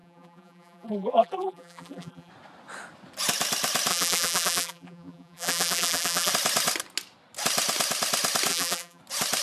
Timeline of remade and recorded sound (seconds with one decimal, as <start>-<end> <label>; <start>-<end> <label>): 0.0-2.3 remade; 2.3-3.9 recorded; 3.9-6.3 remade; 6.3-8.5 recorded; 8.5-9.0 remade; 9.0-9.4 recorded